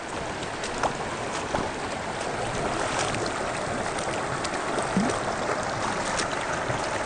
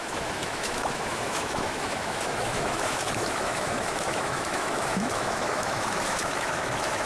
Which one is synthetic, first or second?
second